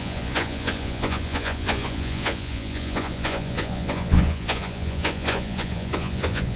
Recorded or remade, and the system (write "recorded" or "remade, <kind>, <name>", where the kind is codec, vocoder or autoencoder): remade, vocoder, Vocos